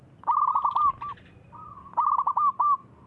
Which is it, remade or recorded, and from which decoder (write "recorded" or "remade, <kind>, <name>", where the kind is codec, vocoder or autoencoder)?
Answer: recorded